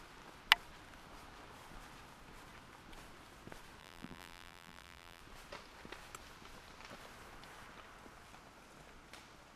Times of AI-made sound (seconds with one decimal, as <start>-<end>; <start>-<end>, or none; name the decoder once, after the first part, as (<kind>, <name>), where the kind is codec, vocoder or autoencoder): 3.8-5.2 (vocoder, BigVGAN v2)

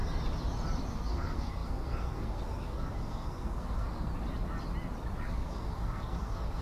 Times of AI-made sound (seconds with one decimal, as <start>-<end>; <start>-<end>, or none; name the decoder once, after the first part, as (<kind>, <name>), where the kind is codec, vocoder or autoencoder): 0.9-4.1 (codec, SNAC); 5.2-6.6